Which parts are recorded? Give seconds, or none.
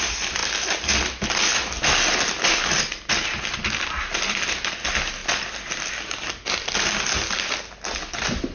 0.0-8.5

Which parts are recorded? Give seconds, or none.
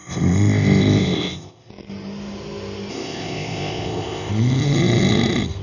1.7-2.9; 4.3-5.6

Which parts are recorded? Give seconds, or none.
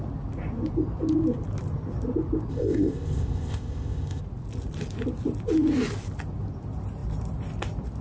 0.0-2.5; 4.2-8.0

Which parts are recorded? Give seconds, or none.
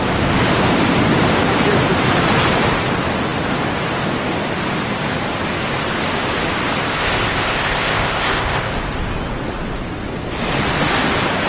0.0-6.9; 8.7-11.5